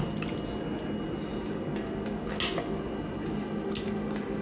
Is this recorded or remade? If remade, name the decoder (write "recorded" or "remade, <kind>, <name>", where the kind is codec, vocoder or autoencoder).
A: recorded